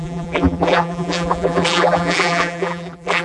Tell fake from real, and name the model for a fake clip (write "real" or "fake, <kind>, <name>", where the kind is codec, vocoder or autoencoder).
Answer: fake, vocoder, BigVGAN v2